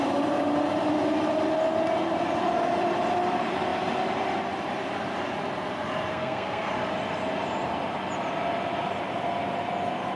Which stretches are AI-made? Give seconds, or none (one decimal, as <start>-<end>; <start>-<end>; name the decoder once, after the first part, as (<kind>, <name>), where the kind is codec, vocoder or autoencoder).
6.1-6.7 (codec, SNAC)